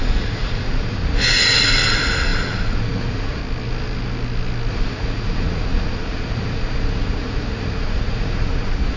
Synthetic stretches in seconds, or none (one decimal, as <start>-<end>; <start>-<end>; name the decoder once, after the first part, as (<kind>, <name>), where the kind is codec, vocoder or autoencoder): 0.0-3.4 (vocoder, Vocos); 4.7-9.0